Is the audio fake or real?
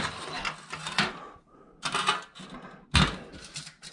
real